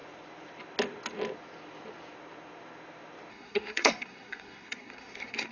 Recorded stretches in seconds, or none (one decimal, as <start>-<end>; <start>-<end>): 0.0-3.3